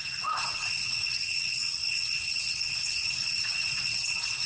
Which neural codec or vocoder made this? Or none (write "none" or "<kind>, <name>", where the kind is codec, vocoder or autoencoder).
vocoder, WaveNeXt